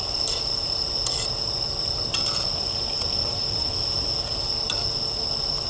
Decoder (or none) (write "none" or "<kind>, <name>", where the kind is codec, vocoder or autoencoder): none